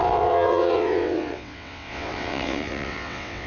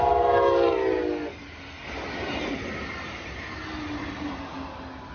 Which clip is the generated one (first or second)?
first